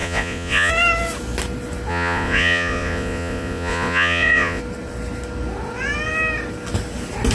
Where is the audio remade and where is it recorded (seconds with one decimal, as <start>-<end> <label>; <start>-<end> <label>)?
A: 0.0-0.7 remade; 0.7-1.9 recorded; 1.9-4.6 remade; 4.6-7.3 recorded